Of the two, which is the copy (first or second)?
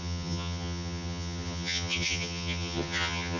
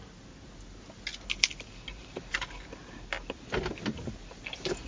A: first